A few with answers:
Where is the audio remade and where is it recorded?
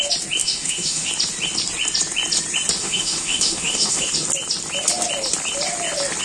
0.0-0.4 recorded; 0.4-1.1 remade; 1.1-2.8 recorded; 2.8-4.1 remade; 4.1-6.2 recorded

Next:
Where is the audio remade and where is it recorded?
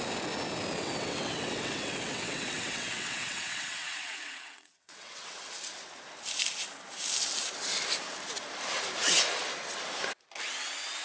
0.0-0.8 recorded; 0.8-5.4 remade; 5.4-11.0 recorded